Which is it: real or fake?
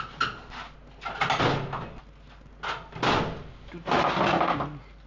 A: real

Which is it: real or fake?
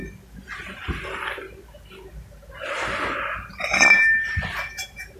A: real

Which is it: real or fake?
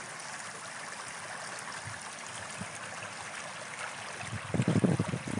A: real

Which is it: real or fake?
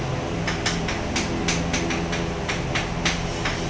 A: real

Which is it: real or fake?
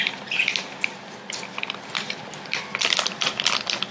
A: real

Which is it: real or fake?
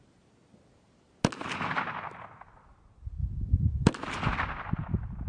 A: real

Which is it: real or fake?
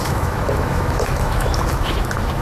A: fake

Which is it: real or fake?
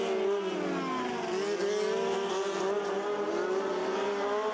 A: real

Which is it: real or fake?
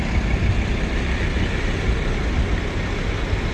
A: real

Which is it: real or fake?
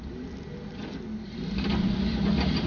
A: real